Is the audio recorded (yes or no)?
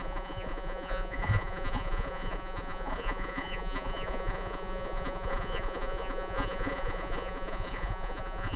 no